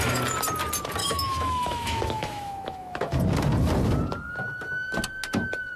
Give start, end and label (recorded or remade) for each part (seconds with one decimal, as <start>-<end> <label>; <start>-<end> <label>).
0.0-1.0 recorded; 1.0-3.2 remade; 3.2-5.8 recorded